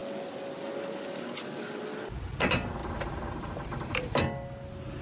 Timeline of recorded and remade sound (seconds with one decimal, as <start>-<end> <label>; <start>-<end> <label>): 0.0-2.8 recorded; 2.8-4.2 remade; 4.2-5.0 recorded